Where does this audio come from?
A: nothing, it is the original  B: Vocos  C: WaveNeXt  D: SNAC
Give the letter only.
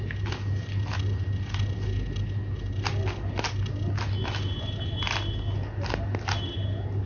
A